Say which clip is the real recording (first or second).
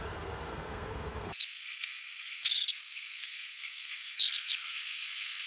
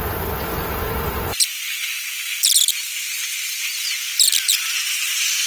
second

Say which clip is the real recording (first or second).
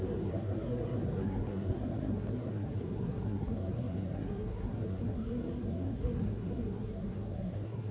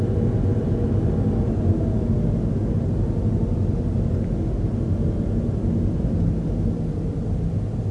second